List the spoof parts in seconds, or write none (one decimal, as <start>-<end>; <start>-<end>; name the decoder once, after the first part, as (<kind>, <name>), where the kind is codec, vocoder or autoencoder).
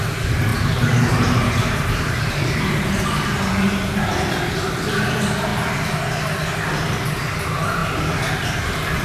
0.5-4.0 (vocoder, BigVGAN v2)